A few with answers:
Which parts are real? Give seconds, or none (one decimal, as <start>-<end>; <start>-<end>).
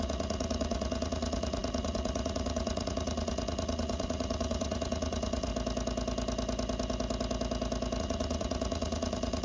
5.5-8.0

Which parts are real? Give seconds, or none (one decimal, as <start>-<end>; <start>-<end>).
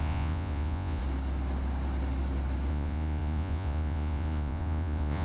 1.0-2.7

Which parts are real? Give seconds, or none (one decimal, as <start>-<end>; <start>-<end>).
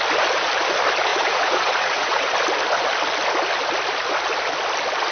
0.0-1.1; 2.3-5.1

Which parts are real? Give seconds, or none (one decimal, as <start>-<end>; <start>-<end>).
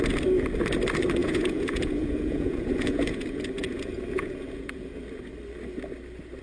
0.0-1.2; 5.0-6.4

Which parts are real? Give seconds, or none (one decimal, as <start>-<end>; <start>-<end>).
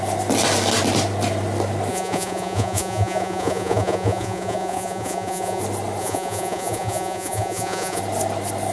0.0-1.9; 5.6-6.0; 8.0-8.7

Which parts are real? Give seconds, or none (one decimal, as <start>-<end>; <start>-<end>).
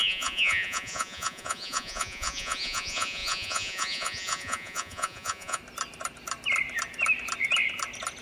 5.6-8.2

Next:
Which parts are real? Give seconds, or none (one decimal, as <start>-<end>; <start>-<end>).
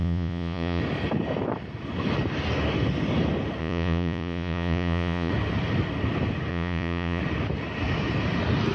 0.8-3.6; 5.3-6.5; 7.2-8.7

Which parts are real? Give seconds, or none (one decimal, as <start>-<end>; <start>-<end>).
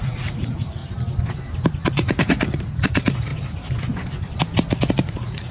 0.8-1.9; 3.3-4.9